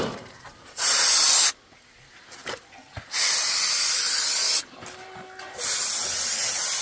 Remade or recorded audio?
recorded